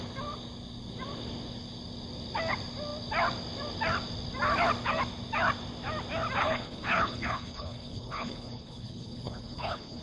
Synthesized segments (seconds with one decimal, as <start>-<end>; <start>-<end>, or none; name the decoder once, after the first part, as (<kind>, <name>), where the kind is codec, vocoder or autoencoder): 6.4-10.0 (codec, HILCodec)